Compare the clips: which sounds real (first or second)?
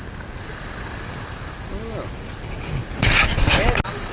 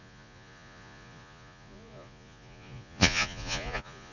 first